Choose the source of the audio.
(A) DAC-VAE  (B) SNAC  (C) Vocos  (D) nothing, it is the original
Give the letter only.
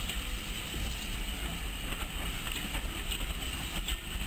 D